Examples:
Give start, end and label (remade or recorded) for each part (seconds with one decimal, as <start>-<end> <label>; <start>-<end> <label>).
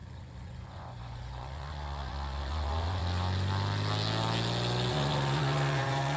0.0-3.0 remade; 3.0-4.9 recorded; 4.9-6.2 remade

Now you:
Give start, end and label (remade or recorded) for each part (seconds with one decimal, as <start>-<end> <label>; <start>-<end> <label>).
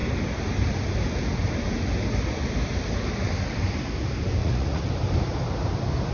0.0-4.4 recorded; 4.4-4.9 remade; 4.9-6.1 recorded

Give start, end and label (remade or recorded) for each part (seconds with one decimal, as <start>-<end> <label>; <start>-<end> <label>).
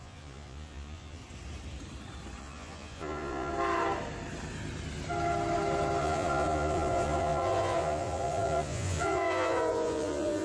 0.0-1.2 remade; 1.2-2.4 recorded; 2.4-3.5 remade; 3.5-6.0 recorded; 6.0-10.4 remade